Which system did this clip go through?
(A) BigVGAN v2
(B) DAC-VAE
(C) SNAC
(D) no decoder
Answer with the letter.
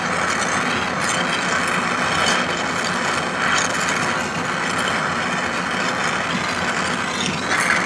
D